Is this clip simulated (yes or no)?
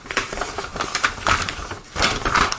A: yes